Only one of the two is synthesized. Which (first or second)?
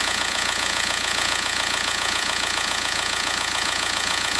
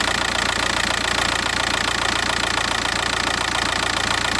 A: first